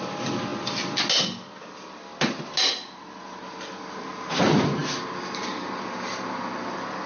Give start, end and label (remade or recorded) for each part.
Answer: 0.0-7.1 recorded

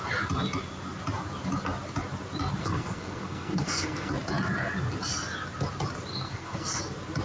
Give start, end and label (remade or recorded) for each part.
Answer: 0.0-2.6 recorded; 2.6-4.1 remade; 4.1-6.1 recorded; 6.1-6.8 remade; 6.8-7.2 recorded